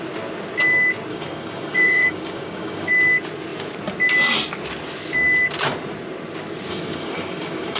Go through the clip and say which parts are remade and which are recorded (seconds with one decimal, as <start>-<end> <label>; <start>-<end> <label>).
0.0-1.1 recorded; 1.1-2.9 remade; 2.9-6.7 recorded; 6.7-7.8 remade